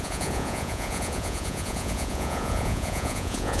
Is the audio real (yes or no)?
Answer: no